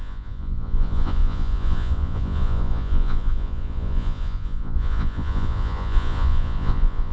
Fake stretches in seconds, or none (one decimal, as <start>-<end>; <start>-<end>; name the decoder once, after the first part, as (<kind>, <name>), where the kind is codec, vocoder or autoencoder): 0.0-7.1 (vocoder, Vocos)